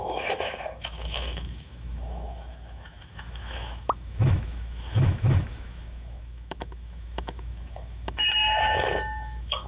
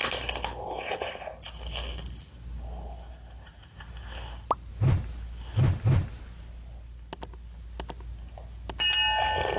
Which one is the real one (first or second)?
second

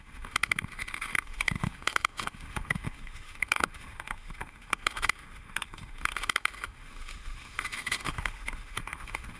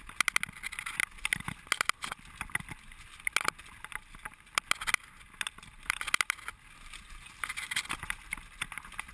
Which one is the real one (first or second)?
second